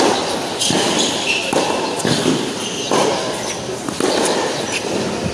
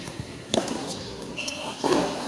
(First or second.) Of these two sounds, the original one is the first